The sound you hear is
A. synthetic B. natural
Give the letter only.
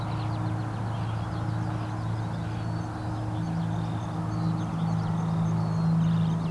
B